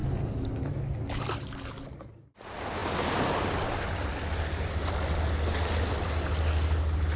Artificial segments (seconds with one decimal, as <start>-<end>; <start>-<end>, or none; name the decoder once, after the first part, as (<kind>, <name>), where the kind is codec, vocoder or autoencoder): none